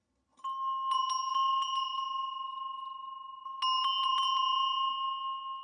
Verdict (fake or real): real